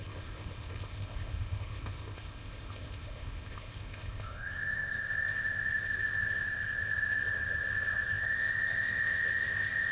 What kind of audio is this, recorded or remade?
remade